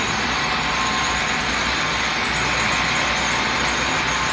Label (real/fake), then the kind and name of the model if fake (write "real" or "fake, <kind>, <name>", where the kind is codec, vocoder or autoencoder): real